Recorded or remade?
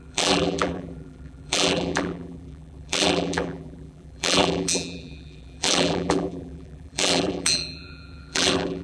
remade